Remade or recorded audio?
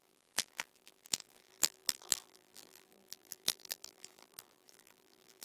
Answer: remade